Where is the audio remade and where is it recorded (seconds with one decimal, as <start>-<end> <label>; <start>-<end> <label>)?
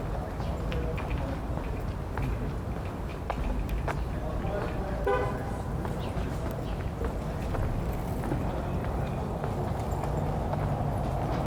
0.0-5.4 recorded; 5.4-6.1 remade; 6.1-11.5 recorded